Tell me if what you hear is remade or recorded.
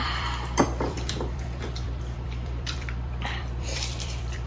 remade